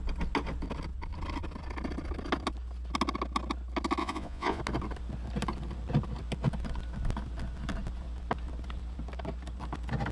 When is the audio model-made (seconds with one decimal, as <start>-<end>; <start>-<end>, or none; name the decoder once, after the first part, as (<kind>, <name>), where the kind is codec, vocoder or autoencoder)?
4.0-4.6 (vocoder, Vocos)